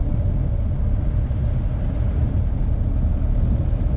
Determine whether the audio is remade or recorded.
recorded